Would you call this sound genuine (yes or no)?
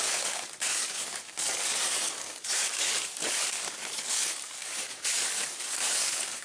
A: no